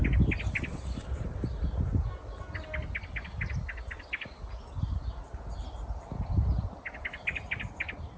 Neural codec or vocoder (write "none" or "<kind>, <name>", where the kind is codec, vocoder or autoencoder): none